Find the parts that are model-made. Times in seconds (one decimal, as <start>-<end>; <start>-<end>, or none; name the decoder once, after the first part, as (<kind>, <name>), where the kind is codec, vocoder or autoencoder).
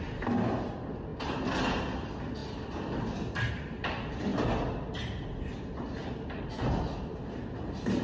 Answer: none